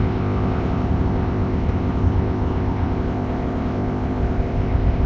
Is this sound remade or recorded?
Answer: remade